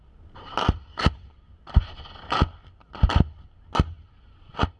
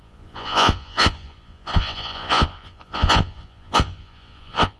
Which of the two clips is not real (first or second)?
second